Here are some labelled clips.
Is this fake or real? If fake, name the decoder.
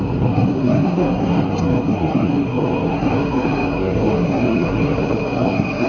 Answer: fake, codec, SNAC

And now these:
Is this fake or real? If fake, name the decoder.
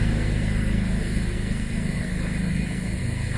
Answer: fake, codec, SNAC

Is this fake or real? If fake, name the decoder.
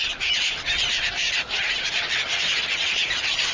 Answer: real